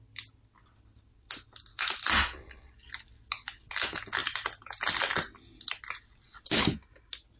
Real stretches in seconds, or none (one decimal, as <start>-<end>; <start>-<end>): 0.0-7.4